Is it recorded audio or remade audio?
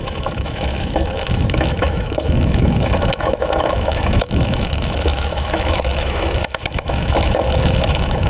remade